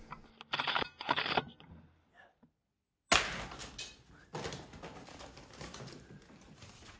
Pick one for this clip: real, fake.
real